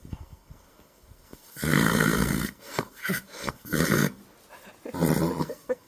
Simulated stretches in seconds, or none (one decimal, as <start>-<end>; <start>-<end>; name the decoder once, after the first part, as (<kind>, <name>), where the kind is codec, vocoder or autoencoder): 0.0-4.2 (codec, SNAC); 5.4-5.9